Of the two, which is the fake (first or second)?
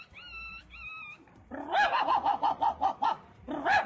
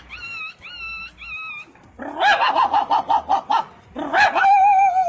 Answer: first